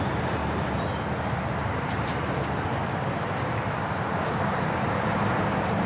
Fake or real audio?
fake